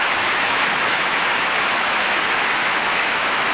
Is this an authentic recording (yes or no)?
no